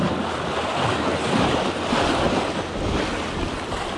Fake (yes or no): no